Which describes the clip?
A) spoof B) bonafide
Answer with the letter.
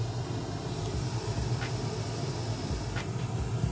B